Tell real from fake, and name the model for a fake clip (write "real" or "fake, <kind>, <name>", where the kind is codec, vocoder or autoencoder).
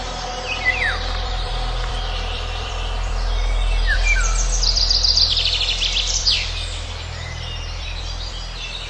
fake, vocoder, BigVGAN v2